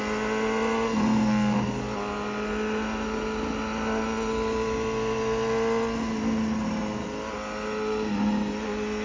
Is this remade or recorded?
recorded